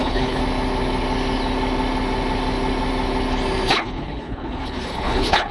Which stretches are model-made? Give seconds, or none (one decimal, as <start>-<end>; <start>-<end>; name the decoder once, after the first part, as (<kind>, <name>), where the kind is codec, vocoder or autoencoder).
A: 0.0-0.4 (codec, HILCodec); 3.7-5.5